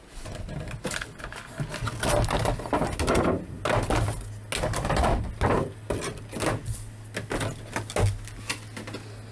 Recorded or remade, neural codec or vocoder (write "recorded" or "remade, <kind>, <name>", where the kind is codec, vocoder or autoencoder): recorded